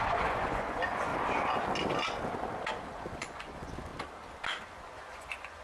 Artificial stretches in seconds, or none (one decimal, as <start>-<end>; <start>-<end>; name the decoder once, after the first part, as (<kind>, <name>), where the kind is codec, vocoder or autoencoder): 0.0-1.1 (vocoder, Vocos); 2.9-3.9; 4.6-5.6